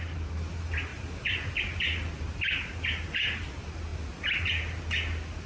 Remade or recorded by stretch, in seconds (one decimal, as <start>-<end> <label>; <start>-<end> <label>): 0.0-0.9 recorded; 0.9-1.8 remade; 1.8-5.5 recorded